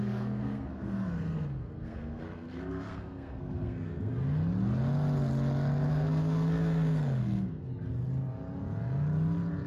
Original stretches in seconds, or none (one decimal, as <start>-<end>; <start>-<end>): 4.1-5.9; 7.7-9.7